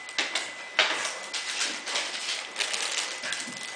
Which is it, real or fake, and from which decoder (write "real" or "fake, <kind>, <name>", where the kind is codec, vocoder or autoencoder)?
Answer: real